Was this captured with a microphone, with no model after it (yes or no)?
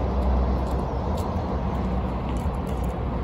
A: yes